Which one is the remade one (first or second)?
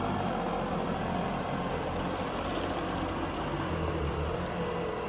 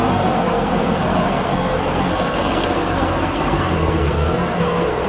second